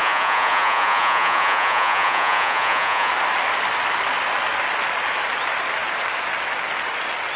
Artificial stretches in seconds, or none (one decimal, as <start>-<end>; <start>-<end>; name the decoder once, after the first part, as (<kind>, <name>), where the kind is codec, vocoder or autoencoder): 0.0-3.1 (vocoder, Vocos)